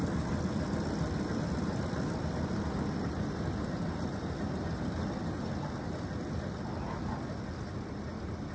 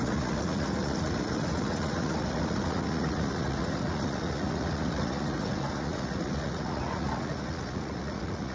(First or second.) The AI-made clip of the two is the second